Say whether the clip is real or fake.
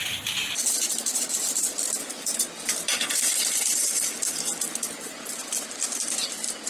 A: real